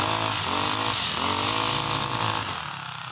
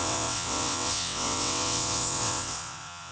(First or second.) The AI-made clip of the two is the second